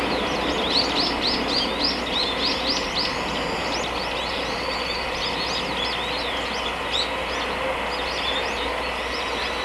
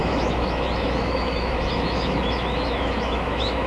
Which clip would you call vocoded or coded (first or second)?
second